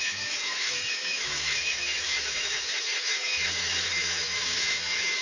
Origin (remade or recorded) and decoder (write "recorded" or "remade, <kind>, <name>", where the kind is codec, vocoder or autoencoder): remade, autoencoder, DAC-VAE